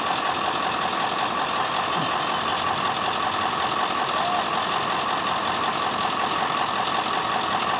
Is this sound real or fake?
real